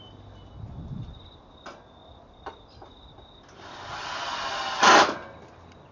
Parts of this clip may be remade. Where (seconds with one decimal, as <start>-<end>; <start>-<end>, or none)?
none